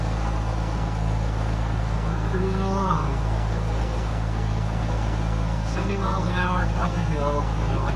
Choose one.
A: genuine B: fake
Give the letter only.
B